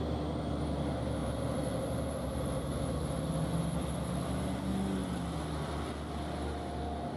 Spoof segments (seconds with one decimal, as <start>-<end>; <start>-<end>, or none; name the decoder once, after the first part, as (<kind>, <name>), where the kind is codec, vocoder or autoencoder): 1.2-3.3 (vocoder, BigVGAN v2)